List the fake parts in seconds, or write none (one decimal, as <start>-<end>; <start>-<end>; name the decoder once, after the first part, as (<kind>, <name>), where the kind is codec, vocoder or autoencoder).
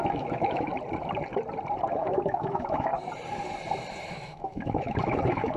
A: 0.0-0.7 (autoencoder, DAC-VAE); 1.9-2.9; 4.1-5.6